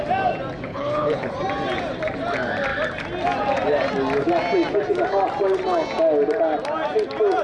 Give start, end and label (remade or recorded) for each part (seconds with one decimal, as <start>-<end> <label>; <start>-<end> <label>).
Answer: 0.0-0.7 recorded; 0.7-1.3 remade; 1.3-7.4 recorded